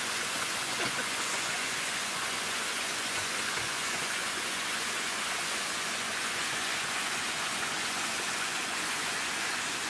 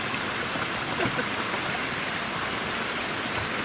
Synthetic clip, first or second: first